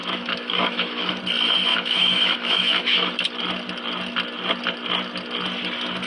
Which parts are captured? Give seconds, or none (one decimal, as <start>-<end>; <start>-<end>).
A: 1.2-1.7; 3.1-6.1